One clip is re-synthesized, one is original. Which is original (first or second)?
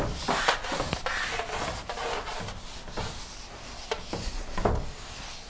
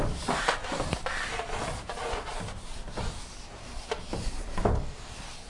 first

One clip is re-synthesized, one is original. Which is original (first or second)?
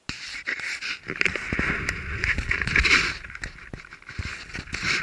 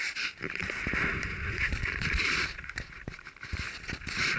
first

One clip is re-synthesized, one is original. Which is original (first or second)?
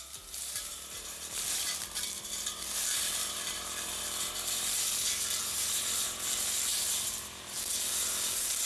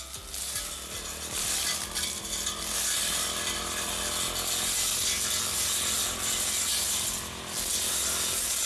second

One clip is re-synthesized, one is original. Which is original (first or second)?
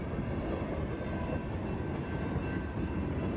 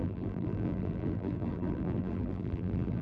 first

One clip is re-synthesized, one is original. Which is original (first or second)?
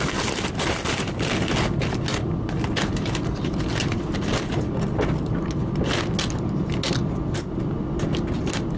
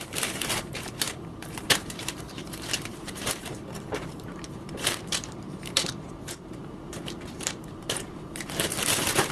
first